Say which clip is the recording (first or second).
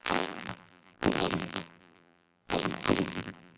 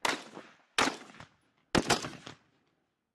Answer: second